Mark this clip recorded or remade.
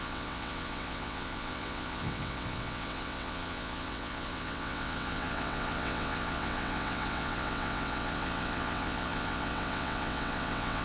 remade